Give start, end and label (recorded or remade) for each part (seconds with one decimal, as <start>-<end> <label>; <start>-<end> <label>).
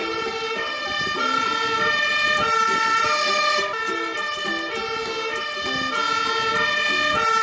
0.0-4.4 remade; 4.4-7.4 recorded